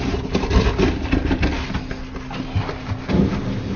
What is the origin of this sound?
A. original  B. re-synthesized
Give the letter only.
A